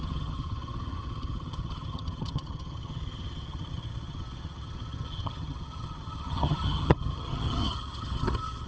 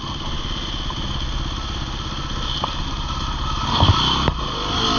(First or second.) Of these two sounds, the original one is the second